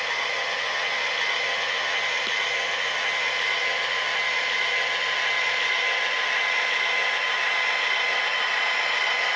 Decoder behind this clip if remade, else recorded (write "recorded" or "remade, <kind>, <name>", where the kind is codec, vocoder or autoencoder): recorded